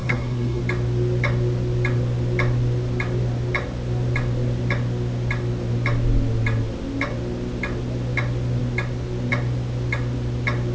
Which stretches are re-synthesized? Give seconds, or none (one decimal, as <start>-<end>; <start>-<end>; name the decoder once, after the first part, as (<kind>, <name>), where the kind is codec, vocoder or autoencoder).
0.0-0.6 (codec, SNAC)